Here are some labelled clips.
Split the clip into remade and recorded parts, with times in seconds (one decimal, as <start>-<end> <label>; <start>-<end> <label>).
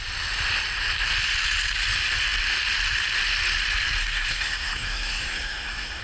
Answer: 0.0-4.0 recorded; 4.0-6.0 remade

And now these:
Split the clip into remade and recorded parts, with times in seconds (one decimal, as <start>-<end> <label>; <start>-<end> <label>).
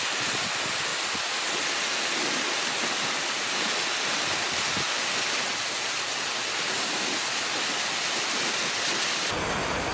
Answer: 0.0-9.9 recorded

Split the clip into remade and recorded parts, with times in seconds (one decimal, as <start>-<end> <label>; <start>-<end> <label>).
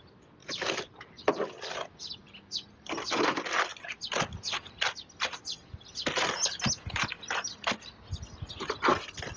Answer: 0.0-0.4 recorded; 0.4-1.3 remade; 1.3-9.4 recorded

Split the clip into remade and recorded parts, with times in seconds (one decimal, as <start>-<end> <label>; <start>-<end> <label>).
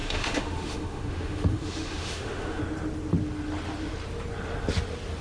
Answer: 0.0-2.6 remade; 2.6-5.2 recorded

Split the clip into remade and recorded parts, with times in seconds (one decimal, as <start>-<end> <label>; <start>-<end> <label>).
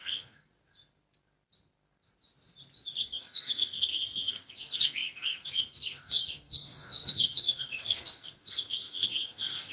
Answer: 0.0-0.5 remade; 0.5-3.0 recorded; 3.0-9.7 remade